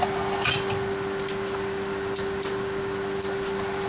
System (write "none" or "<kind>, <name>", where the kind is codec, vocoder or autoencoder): none